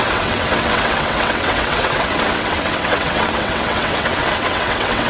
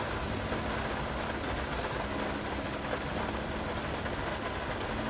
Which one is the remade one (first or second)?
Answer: first